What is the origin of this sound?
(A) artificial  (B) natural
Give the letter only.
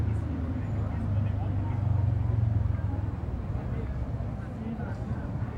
B